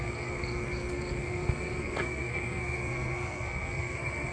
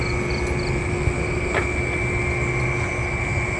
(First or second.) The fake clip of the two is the first